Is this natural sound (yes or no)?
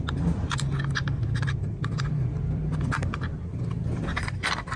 no